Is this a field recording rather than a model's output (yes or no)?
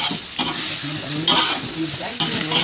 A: yes